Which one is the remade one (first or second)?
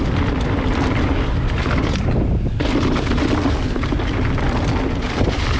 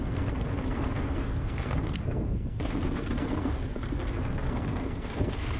second